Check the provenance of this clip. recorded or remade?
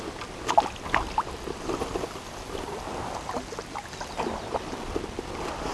recorded